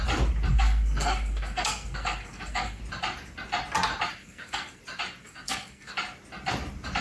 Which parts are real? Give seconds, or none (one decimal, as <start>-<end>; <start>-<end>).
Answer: 0.0-0.5; 2.8-4.2; 4.8-5.2; 5.9-7.0